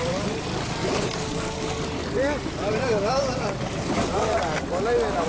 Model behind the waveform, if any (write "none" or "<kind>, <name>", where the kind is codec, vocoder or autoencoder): none